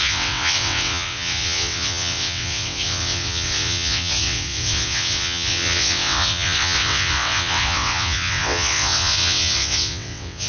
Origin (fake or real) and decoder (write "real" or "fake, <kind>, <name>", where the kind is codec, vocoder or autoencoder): fake, vocoder, WaveNeXt